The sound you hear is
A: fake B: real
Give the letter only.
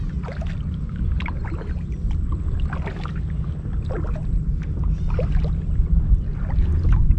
B